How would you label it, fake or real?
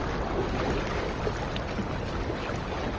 real